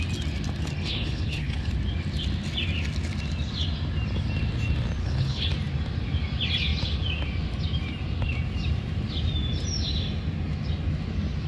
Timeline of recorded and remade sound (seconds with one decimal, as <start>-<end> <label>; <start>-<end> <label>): 0.0-0.8 recorded; 0.8-1.7 remade; 1.7-5.0 recorded; 5.0-5.5 remade; 5.5-11.5 recorded